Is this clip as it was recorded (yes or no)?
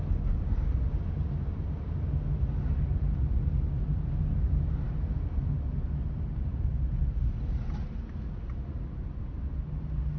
yes